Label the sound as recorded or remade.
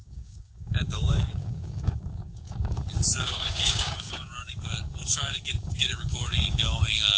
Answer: remade